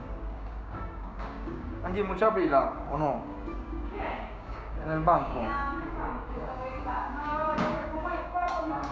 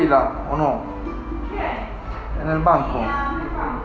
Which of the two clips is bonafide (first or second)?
second